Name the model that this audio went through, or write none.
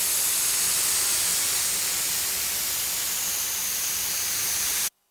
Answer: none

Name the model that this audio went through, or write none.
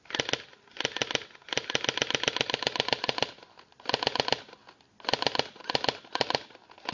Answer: none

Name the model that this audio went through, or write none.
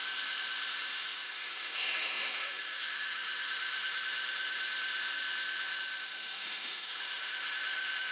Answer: autoencoder, DAC-VAE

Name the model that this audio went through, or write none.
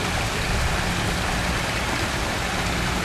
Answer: none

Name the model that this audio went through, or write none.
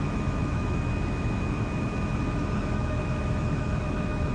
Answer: autoencoder, DAC-VAE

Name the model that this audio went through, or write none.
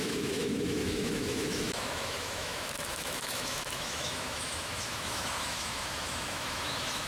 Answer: autoencoder, DAC-VAE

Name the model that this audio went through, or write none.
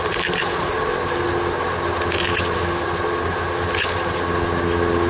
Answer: none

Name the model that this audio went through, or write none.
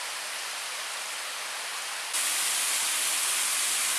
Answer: none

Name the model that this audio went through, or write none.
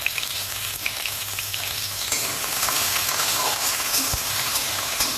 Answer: autoencoder, DAC-VAE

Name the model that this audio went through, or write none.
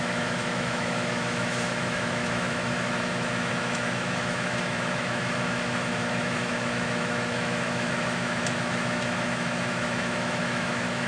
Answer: autoencoder, DAC-VAE